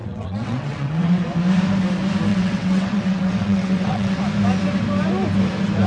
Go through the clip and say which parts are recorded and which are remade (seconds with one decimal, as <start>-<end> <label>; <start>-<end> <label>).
0.0-1.2 remade; 1.2-2.3 recorded; 2.3-4.2 remade; 4.2-5.9 recorded